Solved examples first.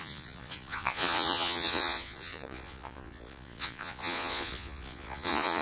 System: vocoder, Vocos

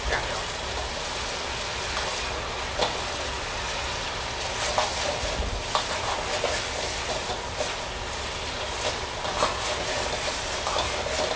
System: none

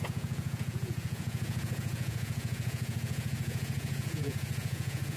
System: vocoder, Vocos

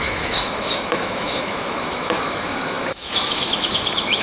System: autoencoder, DAC-VAE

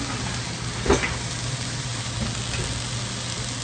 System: none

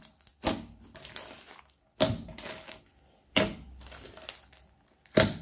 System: none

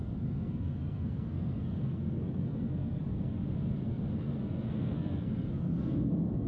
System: codec, SNAC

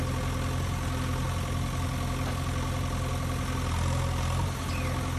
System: none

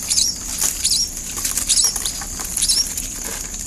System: none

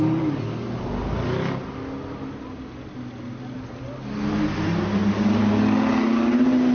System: none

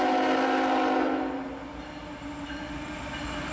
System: none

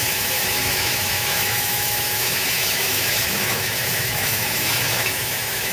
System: autoencoder, DAC-VAE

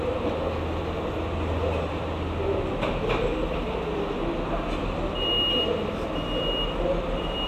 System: none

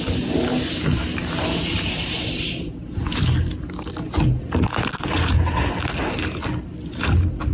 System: none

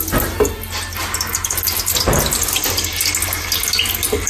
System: none